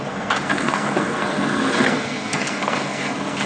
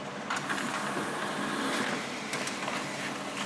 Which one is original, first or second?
second